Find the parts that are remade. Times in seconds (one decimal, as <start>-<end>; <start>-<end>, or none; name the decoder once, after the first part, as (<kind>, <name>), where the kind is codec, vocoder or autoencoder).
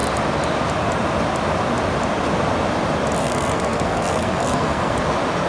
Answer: 3.2-5.0 (codec, SNAC)